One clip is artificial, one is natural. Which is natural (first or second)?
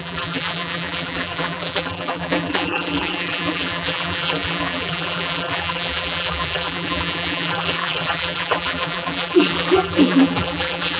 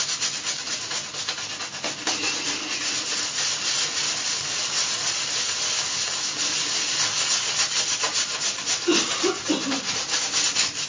second